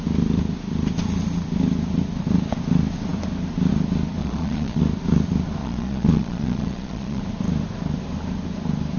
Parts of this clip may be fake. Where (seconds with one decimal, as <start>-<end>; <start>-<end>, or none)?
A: 4.2-4.8; 5.6-7.2